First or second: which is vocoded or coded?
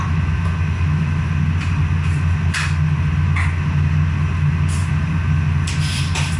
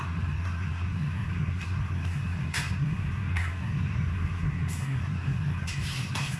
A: second